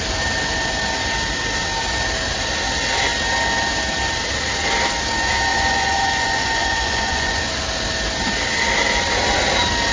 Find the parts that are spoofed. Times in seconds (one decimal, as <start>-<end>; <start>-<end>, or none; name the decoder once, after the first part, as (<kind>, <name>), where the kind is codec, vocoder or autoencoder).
5.5-7.4 (vocoder, Vocos)